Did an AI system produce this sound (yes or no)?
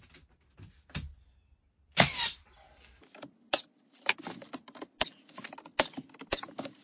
no